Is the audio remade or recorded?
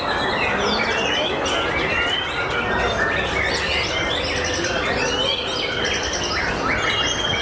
recorded